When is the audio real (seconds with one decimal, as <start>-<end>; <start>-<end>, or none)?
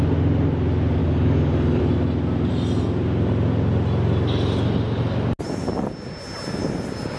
0.0-1.0; 1.8-7.2